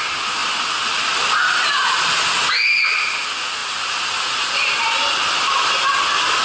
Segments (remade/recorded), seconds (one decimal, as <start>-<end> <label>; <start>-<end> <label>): 0.0-6.4 recorded